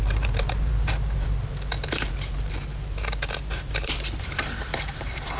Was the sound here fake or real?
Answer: fake